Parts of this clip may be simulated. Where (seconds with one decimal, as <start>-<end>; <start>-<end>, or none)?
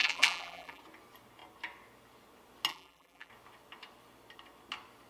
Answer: 0.0-0.8; 2.7-3.3